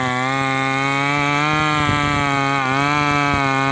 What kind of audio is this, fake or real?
real